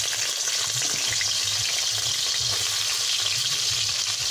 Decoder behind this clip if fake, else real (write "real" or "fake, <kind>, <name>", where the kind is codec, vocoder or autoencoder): real